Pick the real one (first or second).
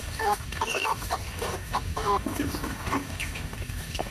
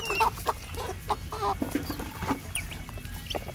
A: second